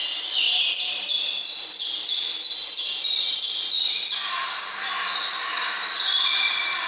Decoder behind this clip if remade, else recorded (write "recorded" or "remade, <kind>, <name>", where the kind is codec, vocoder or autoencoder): remade, vocoder, BigVGAN v2